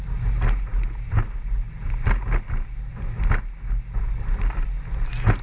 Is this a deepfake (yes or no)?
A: no